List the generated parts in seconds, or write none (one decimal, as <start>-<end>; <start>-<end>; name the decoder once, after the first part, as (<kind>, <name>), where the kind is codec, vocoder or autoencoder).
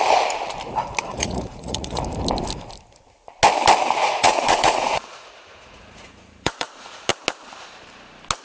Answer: 1.1-2.0 (vocoder, Vocos); 4.0-7.1